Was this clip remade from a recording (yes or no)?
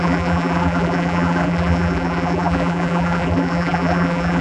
yes